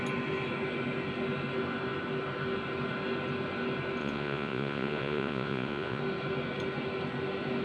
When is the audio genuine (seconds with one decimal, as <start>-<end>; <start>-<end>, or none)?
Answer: 0.0-4.0; 6.0-7.6